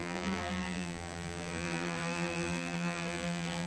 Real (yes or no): no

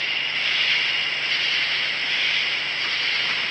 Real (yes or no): yes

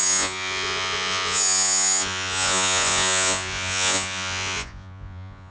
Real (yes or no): no